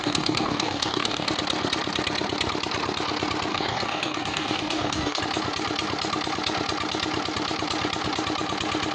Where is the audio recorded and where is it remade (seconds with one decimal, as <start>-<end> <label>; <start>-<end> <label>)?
0.0-1.3 remade; 1.3-3.5 recorded; 3.5-5.2 remade; 5.2-8.9 recorded